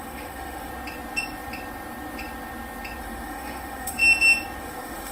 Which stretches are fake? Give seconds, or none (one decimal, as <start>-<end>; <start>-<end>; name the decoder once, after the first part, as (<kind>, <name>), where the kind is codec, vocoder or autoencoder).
0.0-0.7 (autoencoder, DAC-VAE); 3.0-4.0; 4.6-5.1